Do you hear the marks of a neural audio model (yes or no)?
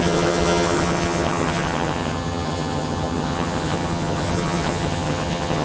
yes